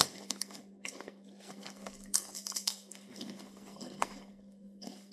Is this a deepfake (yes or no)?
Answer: yes